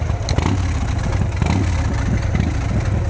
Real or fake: real